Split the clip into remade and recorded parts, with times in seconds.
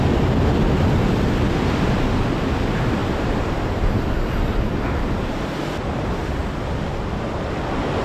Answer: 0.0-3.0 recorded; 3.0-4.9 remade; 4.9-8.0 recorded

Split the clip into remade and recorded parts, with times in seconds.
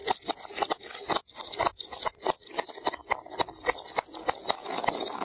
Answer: 0.0-5.2 recorded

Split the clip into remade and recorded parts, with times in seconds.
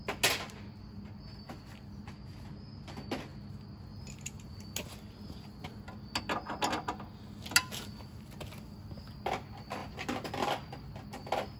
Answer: 0.0-11.6 recorded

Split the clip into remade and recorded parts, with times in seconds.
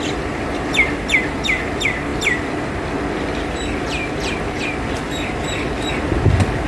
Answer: 0.0-6.7 recorded